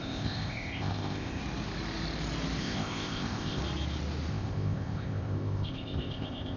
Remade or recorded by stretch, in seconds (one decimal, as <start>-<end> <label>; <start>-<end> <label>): 0.0-1.4 remade; 1.4-2.6 recorded; 2.6-3.6 remade; 3.6-4.3 recorded; 4.3-6.6 remade

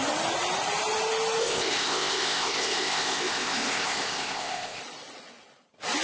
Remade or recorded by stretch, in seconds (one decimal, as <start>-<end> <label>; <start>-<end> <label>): 0.0-1.4 recorded; 1.4-4.8 remade; 4.8-6.0 recorded

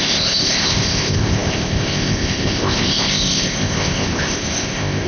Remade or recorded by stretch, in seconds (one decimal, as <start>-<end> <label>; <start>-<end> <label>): 0.0-5.1 remade